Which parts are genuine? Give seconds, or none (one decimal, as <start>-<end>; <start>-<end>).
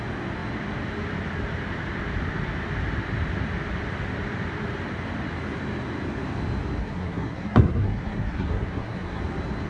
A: 0.0-6.8; 9.2-9.7